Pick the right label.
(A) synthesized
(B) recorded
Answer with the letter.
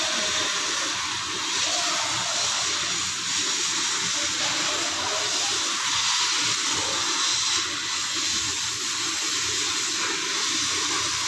B